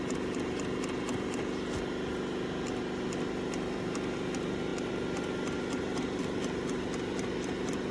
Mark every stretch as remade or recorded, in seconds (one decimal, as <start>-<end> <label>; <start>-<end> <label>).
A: 0.0-7.9 recorded